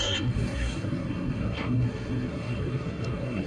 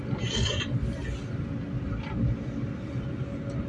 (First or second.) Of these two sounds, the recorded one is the second